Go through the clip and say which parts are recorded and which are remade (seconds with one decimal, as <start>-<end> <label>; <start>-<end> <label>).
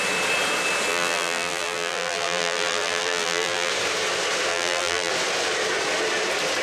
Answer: 0.0-0.9 recorded; 0.9-3.7 remade; 3.7-4.5 recorded; 4.5-5.1 remade; 5.1-6.6 recorded